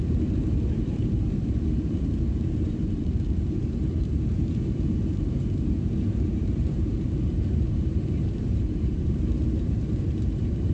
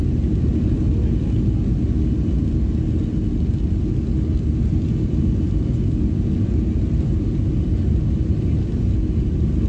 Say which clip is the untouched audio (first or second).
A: second